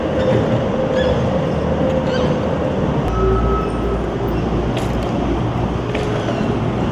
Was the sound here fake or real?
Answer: real